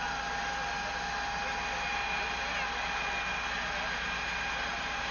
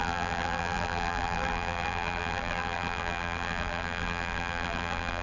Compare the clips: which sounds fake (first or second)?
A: second